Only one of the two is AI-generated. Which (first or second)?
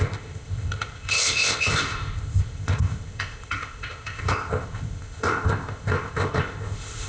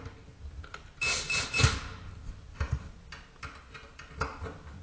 first